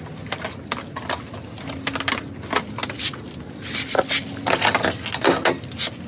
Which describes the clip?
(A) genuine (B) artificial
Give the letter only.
A